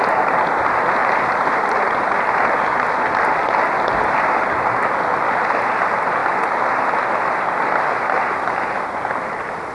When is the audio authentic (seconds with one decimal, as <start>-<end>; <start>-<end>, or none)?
0.0-1.0; 2.2-9.7